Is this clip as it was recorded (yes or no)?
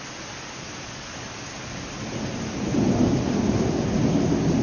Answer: yes